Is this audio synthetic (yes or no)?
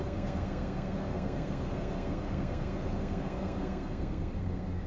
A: yes